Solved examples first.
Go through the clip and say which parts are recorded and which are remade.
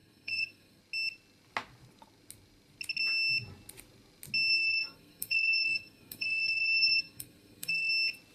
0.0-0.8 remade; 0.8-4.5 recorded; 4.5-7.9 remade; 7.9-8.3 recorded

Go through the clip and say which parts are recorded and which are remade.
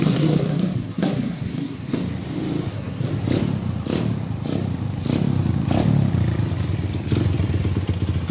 0.0-1.9 remade; 1.9-2.7 recorded; 2.7-3.1 remade; 3.1-8.3 recorded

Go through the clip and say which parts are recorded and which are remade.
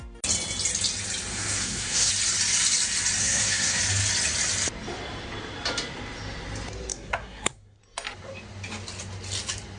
0.0-1.3 recorded; 1.3-2.1 remade; 2.1-3.2 recorded; 3.2-3.8 remade; 3.8-6.9 recorded; 6.9-7.8 remade; 7.8-9.8 recorded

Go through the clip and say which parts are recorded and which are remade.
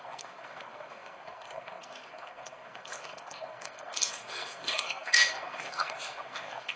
0.0-6.8 remade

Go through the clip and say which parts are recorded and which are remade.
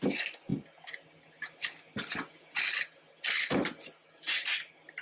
0.0-5.0 recorded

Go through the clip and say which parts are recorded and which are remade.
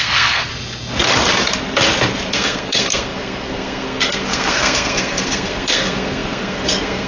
0.0-0.5 remade; 0.5-2.3 recorded; 2.3-7.1 remade